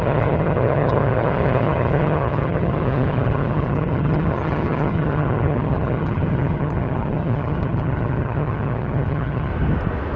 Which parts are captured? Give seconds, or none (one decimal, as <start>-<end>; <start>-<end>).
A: 9.5-10.2